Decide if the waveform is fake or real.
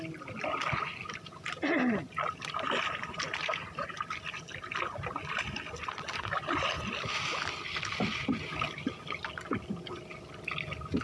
real